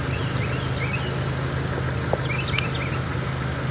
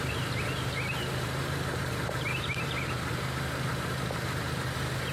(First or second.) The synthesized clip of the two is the second